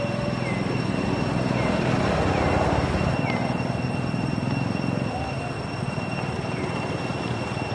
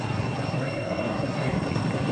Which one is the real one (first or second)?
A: first